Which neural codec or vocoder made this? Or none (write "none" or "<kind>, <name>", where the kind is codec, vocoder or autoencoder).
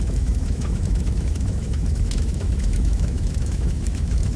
autoencoder, DAC-VAE